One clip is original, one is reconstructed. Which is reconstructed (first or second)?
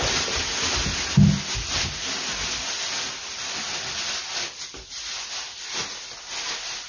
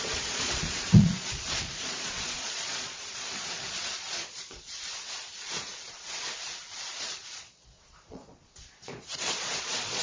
second